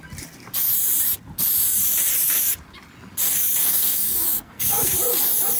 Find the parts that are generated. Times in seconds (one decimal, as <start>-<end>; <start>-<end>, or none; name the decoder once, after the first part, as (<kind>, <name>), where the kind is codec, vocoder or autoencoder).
3.6-4.9 (codec, SNAC)

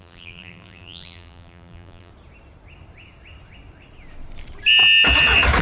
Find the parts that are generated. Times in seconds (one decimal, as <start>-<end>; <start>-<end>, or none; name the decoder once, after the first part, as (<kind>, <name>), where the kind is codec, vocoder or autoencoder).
0.0-2.1 (vocoder, BigVGAN v2)

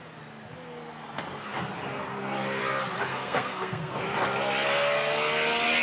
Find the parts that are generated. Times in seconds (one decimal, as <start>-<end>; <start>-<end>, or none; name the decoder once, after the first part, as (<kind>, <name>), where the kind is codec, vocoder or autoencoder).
3.1-4.0 (codec, SNAC)

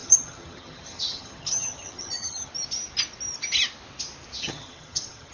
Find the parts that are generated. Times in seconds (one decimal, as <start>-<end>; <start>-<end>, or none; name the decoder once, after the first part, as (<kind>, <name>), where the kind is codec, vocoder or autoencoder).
0.0-2.5 (vocoder, HiFi-GAN); 4.4-5.3

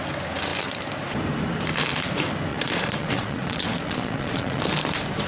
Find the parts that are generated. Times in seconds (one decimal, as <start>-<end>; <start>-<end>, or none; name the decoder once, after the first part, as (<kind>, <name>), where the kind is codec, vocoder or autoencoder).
2.5-4.6 (vocoder, Vocos)

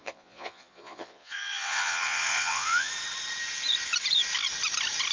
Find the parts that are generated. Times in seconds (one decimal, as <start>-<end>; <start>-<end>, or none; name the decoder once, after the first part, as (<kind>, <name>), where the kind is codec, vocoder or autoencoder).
0.0-2.9 (vocoder, Vocos)

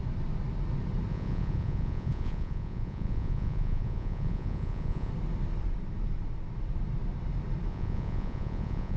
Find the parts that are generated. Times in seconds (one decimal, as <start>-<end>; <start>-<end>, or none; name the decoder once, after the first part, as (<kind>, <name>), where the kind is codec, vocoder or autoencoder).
1.1-5.1 (vocoder, Vocos); 7.7-9.0